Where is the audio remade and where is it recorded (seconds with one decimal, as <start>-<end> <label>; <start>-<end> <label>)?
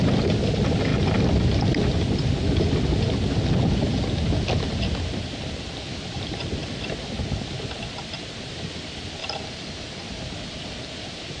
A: 0.0-9.2 recorded; 9.2-10.2 remade; 10.2-11.4 recorded